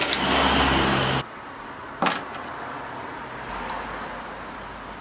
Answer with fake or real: real